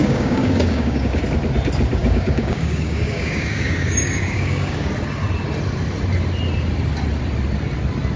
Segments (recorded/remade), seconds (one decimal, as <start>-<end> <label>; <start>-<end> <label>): 0.0-1.2 remade; 1.2-2.0 recorded; 2.0-4.9 remade; 4.9-8.2 recorded

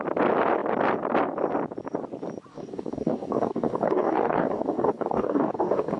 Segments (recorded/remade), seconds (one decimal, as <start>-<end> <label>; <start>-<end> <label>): 0.0-2.5 recorded; 2.5-6.0 remade

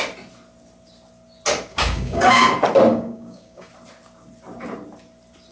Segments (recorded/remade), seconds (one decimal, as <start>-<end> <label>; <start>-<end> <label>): 0.0-1.7 recorded; 1.7-2.4 remade; 2.4-2.9 recorded; 2.9-3.7 remade; 3.7-5.5 recorded

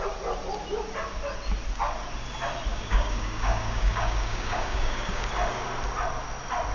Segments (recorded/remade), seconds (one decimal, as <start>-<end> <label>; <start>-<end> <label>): 0.0-2.7 recorded; 2.7-5.3 remade; 5.3-6.7 recorded

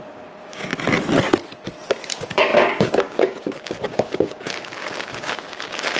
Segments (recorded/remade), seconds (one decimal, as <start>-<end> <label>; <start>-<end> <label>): 0.0-0.7 remade; 0.7-2.1 recorded; 2.1-6.0 remade

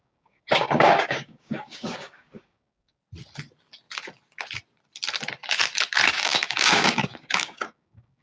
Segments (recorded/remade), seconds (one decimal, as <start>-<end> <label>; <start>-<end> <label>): 0.0-3.0 remade; 3.0-6.1 recorded; 6.1-8.2 remade